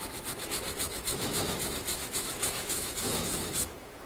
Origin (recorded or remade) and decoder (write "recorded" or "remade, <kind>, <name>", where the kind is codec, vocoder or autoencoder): remade, autoencoder, DAC-VAE